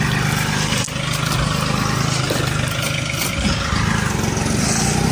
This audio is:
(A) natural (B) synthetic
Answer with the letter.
A